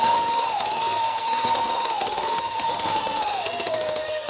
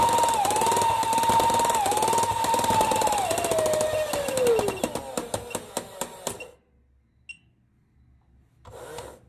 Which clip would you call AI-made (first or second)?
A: first